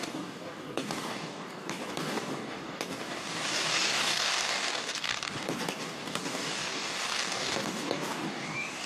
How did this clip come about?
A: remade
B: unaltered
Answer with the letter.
A